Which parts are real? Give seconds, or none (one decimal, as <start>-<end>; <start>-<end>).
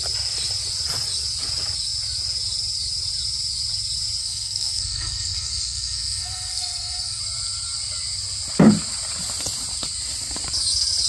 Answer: 0.0-4.2; 7.2-11.1